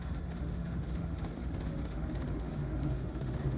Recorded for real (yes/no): no